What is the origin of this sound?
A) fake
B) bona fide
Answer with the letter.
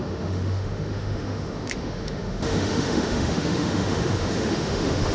A